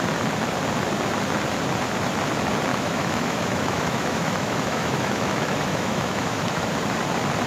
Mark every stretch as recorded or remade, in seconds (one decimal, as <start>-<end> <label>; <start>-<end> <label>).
0.0-2.7 recorded; 2.7-6.7 remade; 6.7-7.5 recorded